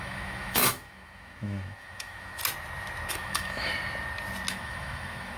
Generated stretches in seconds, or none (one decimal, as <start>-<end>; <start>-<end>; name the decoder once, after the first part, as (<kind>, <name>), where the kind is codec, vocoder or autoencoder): 0.0-2.4 (autoencoder, DAC-VAE); 3.1-3.7; 4.5-5.4